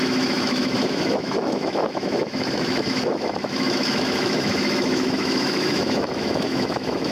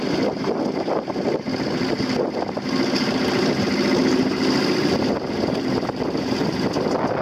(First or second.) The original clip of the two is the second